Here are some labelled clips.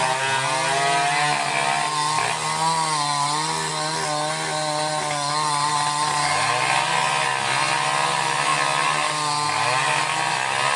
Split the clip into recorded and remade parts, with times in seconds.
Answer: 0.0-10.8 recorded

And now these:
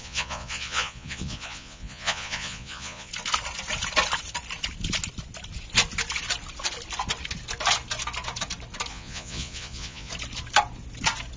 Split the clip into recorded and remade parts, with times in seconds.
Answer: 0.0-3.1 remade; 3.1-8.9 recorded; 8.9-10.1 remade; 10.1-11.4 recorded

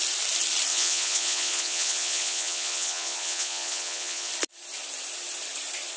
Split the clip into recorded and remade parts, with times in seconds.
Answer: 0.0-0.7 recorded; 0.7-4.3 remade; 4.3-6.0 recorded

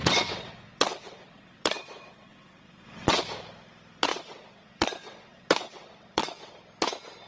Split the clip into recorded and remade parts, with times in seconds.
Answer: 0.0-3.2 remade; 3.2-4.1 recorded; 4.1-6.5 remade; 6.5-7.3 recorded

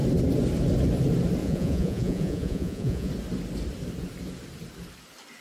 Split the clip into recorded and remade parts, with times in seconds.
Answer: 0.0-1.4 recorded; 1.4-3.1 remade; 3.1-5.4 recorded

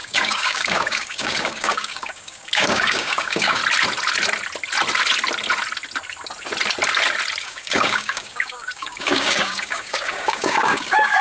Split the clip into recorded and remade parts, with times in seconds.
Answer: 0.0-3.6 remade; 3.6-7.4 recorded; 7.4-11.2 remade